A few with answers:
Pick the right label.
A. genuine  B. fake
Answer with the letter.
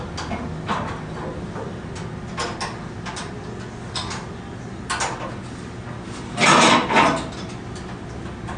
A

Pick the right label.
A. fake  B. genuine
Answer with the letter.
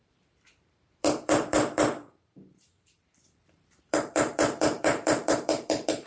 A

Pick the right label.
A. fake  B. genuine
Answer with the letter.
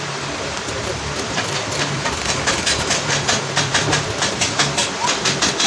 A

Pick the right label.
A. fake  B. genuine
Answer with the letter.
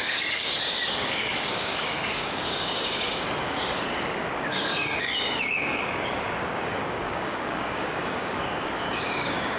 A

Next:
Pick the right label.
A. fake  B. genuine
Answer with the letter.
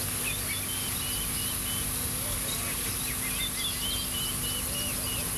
B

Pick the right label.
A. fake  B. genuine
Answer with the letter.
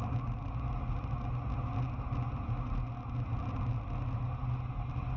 B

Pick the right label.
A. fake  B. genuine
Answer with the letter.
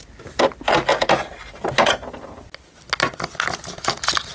B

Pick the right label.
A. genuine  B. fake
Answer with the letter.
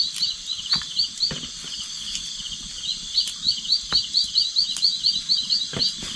A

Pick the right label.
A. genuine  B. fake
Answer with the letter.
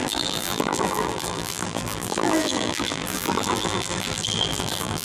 B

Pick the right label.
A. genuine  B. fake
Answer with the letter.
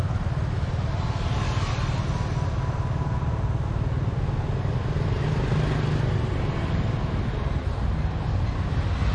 A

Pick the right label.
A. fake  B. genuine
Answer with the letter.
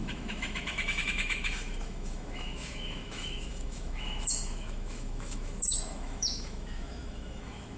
A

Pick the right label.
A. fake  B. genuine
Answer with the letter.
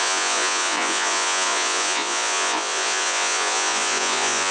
A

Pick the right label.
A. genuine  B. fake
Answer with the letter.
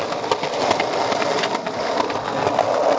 A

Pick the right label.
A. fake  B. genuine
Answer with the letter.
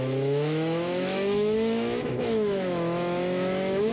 A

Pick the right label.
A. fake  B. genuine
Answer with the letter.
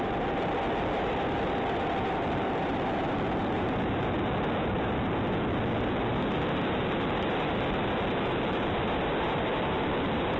B